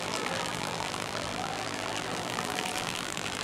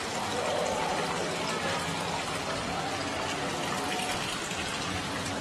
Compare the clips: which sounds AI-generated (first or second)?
first